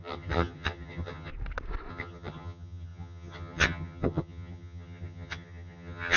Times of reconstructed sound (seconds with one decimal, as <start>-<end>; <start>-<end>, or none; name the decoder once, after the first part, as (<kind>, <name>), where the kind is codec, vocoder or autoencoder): 0.0-1.3 (vocoder, HiFi-GAN); 1.9-6.2